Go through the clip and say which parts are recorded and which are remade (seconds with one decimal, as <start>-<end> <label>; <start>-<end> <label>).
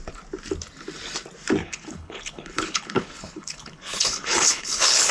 0.0-1.6 recorded; 1.6-5.1 remade